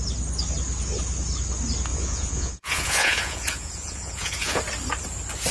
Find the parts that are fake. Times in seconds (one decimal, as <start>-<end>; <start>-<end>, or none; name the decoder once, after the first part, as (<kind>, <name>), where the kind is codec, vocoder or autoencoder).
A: 1.9-4.6 (vocoder, Vocos)